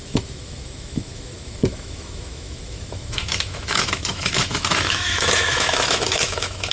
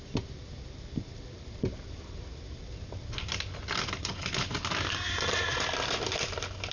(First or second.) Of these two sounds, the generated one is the first